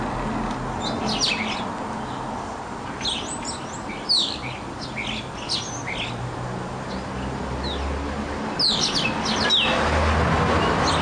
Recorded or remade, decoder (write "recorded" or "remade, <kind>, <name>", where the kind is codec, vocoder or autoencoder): recorded